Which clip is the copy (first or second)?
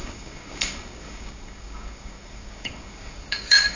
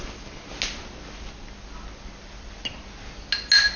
first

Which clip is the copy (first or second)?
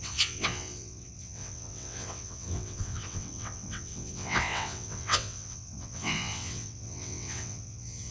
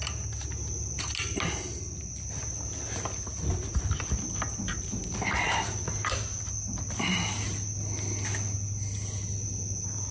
first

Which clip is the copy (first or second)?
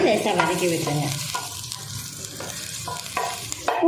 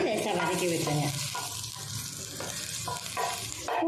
first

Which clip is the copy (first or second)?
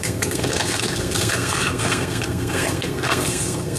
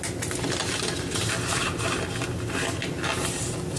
first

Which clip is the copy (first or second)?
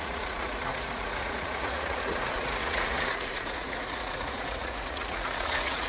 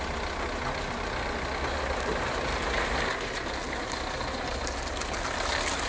first